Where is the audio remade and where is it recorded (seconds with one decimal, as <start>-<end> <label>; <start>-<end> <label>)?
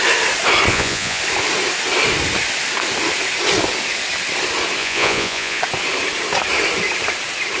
0.0-0.7 recorded; 0.7-1.2 remade; 1.2-4.8 recorded; 4.8-5.6 remade; 5.6-7.6 recorded